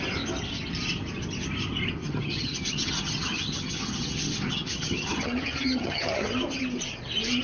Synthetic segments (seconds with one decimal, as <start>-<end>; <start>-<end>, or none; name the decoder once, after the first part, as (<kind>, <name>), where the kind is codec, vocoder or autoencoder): 2.0-6.4 (vocoder, HiFi-GAN)

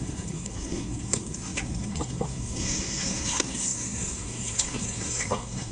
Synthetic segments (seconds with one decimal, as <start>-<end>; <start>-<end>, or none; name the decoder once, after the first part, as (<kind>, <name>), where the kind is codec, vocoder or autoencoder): 0.0-5.7 (codec, SNAC)

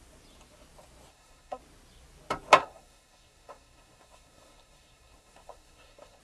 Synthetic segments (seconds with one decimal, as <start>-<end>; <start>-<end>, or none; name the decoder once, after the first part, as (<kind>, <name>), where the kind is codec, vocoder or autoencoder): 1.1-1.6 (codec, SNAC); 2.6-6.2

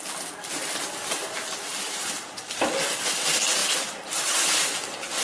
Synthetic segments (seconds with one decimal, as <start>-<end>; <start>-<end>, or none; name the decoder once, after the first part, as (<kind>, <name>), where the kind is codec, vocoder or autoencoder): none

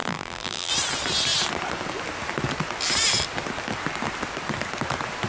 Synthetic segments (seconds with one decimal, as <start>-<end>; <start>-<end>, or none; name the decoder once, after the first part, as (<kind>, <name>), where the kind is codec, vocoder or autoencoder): 0.0-0.7 (vocoder, BigVGAN v2)

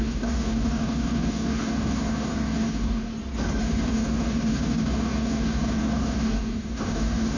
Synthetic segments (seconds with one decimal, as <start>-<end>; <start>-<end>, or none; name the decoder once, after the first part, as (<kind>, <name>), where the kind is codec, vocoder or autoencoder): 0.0-3.1 (codec, DAC); 3.6-7.4

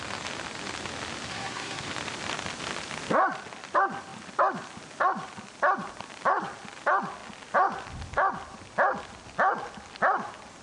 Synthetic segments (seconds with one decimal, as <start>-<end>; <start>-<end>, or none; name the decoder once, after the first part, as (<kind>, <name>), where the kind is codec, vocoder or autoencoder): 1.3-1.8 (codec, SNAC)

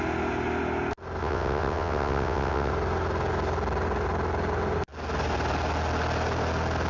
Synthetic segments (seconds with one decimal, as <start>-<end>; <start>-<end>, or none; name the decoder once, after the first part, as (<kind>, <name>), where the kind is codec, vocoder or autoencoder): 1.2-2.7 (vocoder, WaveNeXt)